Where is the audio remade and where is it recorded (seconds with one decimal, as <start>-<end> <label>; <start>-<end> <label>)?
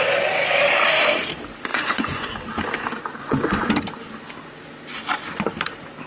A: 0.0-1.7 recorded; 1.7-2.3 remade; 2.3-3.2 recorded; 3.2-3.7 remade; 3.7-6.1 recorded